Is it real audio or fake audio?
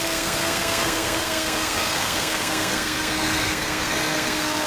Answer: fake